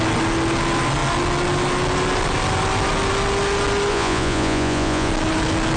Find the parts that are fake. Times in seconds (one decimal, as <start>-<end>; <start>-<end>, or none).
3.9-5.1